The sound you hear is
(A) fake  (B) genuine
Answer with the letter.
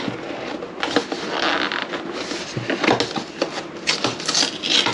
B